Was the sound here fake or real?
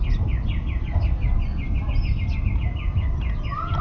real